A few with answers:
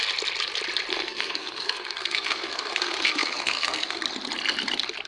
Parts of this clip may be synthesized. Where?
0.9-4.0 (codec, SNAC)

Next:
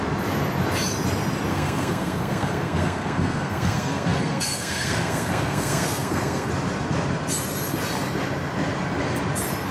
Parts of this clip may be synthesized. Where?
1.5-6.5 (codec, SNAC)